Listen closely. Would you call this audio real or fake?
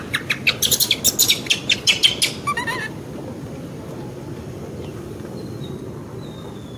real